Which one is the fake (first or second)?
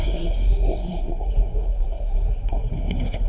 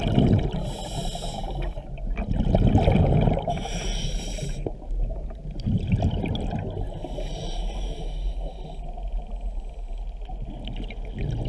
first